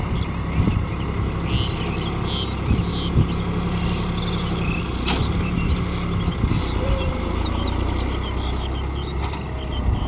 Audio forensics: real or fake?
real